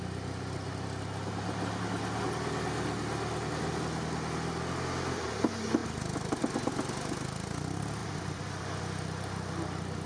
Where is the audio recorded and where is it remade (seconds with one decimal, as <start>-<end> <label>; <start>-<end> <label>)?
0.0-8.0 recorded; 8.0-8.8 remade; 8.8-10.1 recorded